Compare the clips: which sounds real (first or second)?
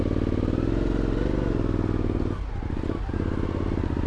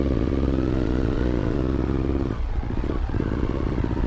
first